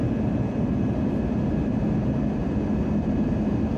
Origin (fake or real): real